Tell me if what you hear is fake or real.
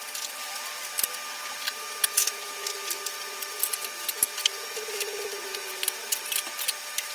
real